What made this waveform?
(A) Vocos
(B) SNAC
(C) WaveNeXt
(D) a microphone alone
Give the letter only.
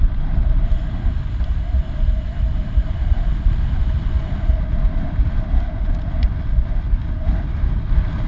D